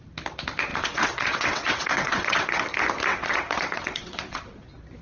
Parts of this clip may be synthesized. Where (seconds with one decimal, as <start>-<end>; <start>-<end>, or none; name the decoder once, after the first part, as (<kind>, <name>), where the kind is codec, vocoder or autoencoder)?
0.7-2.6 (vocoder, WaveNeXt); 3.1-4.6